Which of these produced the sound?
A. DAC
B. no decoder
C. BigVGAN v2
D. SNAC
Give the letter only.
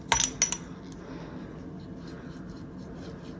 B